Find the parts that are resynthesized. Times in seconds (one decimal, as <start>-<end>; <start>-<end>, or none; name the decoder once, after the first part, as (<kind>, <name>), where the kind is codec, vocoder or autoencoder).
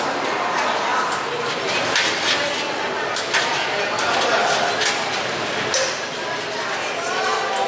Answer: none